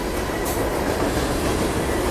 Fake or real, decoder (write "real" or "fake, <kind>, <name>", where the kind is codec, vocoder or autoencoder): real